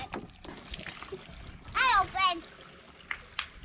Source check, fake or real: real